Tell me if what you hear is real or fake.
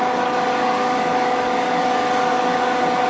fake